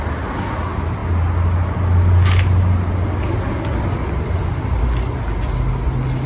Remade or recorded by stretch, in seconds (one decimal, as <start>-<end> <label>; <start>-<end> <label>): 0.0-6.3 recorded